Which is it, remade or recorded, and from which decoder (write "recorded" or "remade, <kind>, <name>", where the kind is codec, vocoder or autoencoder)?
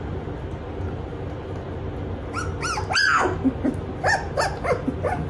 recorded